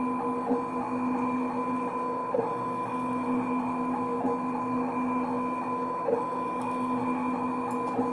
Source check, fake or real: real